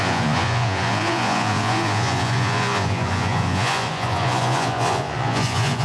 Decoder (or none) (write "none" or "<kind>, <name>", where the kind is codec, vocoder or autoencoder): vocoder, Vocos